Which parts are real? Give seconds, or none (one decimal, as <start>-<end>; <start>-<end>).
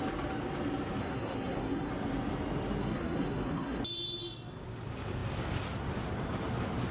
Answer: 0.0-1.0; 1.9-2.8; 3.8-6.9